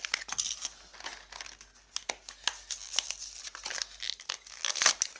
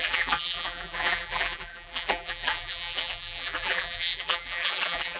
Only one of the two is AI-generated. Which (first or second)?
second